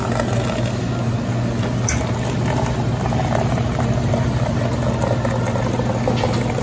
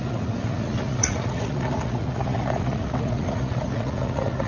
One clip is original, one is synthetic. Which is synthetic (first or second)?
second